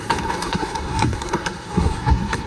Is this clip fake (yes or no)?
yes